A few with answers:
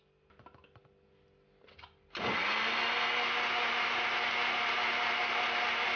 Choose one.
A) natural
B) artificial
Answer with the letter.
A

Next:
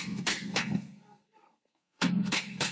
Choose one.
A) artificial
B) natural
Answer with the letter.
A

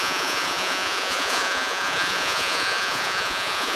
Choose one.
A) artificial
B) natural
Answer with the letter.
A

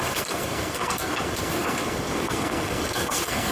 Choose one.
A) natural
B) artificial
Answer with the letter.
B